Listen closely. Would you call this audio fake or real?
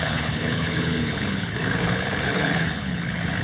fake